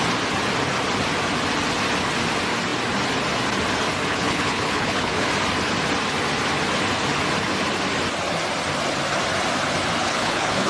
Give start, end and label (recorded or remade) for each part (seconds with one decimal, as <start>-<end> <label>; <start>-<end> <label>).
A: 0.0-4.1 recorded; 4.1-5.3 remade; 5.3-10.0 recorded; 10.0-10.7 remade